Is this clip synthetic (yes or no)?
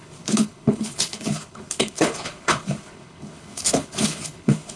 yes